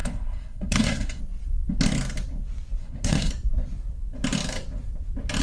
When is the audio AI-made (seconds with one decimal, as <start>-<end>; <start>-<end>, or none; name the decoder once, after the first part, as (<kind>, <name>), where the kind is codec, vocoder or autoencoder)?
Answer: 0.0-1.2 (codec, SNAC); 2.8-3.3